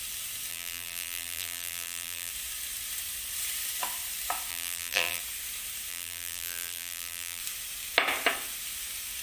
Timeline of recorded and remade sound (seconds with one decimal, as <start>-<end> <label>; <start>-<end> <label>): 0.0-0.5 recorded; 0.5-2.3 remade; 2.3-4.5 recorded; 4.5-5.2 remade; 5.2-5.9 recorded; 5.9-7.4 remade; 7.4-9.2 recorded